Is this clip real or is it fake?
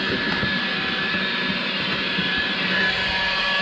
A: fake